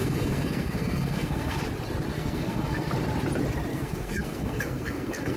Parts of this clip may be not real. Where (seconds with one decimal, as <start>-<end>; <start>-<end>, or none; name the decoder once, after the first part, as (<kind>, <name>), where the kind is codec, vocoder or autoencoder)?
0.0-1.6 (codec, SNAC); 2.1-2.9; 3.7-5.4